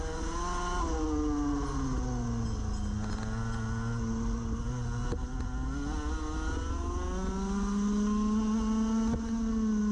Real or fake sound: real